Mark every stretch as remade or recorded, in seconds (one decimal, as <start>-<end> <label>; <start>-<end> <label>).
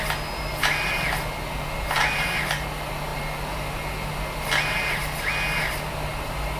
0.0-6.6 recorded